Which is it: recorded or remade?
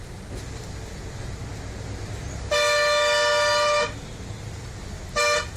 recorded